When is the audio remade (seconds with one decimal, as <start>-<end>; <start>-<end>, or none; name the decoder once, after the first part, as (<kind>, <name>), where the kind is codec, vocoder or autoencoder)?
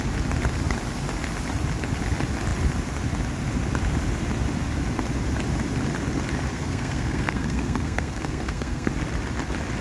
6.5-8.9 (codec, SNAC)